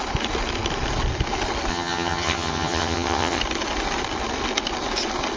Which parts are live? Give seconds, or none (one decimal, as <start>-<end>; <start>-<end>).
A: 0.0-1.7; 3.4-5.4